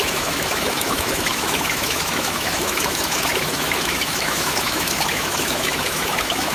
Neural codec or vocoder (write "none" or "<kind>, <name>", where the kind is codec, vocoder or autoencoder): autoencoder, DAC-VAE